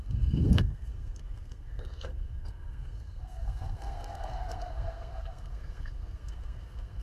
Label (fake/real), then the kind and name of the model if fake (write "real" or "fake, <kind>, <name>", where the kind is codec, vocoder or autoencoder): fake, codec, SNAC